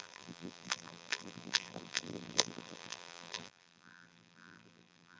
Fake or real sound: fake